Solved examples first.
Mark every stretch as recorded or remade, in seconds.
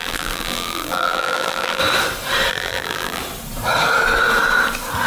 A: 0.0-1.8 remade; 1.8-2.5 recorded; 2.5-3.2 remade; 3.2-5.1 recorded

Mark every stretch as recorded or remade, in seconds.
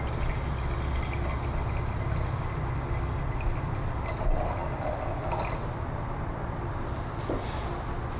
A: 0.0-8.2 recorded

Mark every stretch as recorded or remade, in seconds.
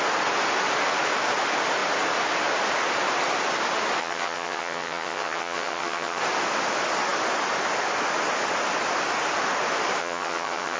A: 0.0-4.0 recorded; 4.0-6.2 remade; 6.2-10.0 recorded; 10.0-10.8 remade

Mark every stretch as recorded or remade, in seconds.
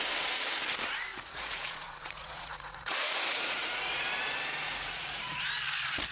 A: 0.0-1.1 recorded; 1.1-4.1 remade; 4.1-4.6 recorded; 4.6-5.5 remade; 5.5-6.1 recorded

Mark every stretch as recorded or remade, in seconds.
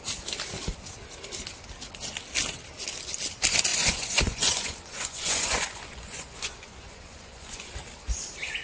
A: 0.0-3.7 recorded; 3.7-7.7 remade; 7.7-8.6 recorded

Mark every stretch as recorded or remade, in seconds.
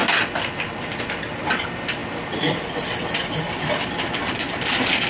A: 0.0-5.1 recorded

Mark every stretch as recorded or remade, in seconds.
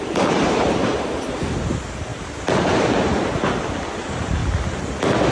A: 0.0-2.1 remade; 2.1-4.0 recorded; 4.0-4.4 remade; 4.4-5.3 recorded